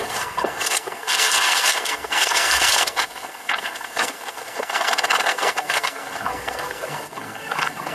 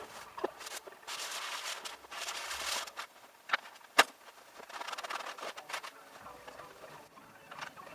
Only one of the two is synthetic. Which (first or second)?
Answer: first